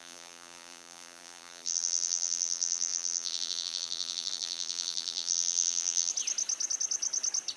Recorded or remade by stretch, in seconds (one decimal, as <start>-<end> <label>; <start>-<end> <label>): 0.0-6.1 remade; 6.1-7.6 recorded

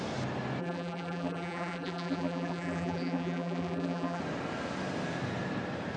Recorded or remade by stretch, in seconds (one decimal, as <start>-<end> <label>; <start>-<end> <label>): 0.0-0.6 recorded; 0.6-4.2 remade; 4.2-6.0 recorded